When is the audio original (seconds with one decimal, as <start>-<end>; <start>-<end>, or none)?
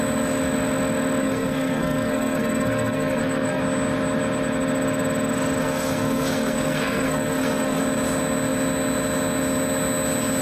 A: 0.0-1.2; 3.6-5.6; 7.8-10.4